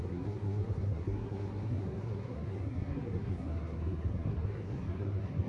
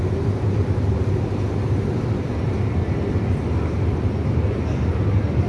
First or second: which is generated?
first